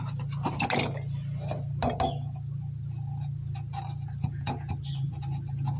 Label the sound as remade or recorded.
recorded